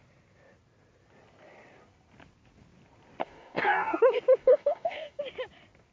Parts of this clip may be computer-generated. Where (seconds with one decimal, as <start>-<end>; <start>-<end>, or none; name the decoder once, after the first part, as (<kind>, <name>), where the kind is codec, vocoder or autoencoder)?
3.2-4.0 (codec, DAC); 4.4-5.2